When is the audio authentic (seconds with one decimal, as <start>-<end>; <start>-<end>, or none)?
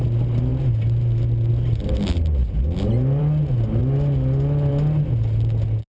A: 0.0-5.9